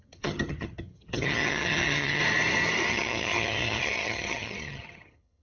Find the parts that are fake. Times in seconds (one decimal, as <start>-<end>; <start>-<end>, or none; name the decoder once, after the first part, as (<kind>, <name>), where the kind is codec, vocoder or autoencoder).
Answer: 0.0-2.2 (vocoder, HiFi-GAN); 2.9-5.4